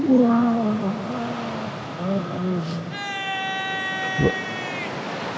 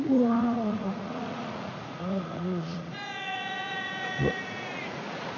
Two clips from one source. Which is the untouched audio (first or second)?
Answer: first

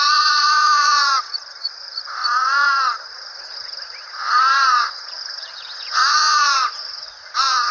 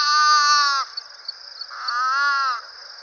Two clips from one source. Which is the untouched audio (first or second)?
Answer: second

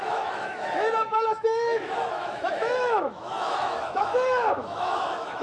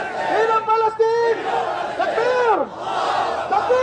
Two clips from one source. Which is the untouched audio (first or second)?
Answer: second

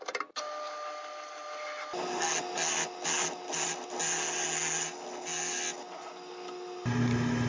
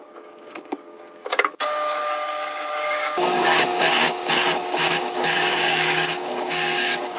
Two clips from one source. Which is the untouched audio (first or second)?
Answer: first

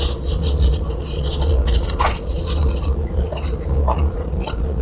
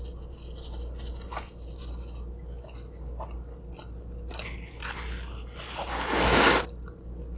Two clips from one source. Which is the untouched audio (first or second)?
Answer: second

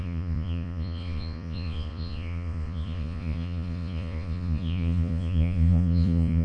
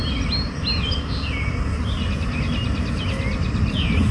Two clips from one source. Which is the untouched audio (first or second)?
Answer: second